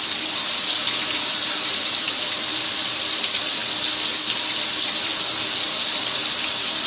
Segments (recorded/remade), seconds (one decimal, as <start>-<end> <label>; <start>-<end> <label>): 0.0-3.6 remade; 3.6-4.7 recorded; 4.7-6.9 remade